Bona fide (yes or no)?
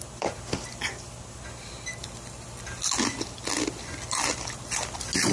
yes